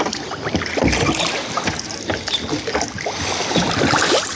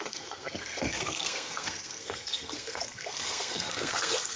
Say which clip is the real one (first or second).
first